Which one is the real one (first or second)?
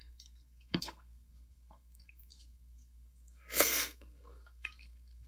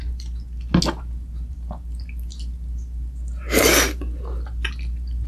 second